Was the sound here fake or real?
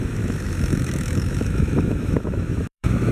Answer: fake